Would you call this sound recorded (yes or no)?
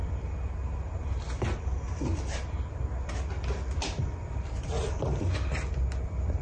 yes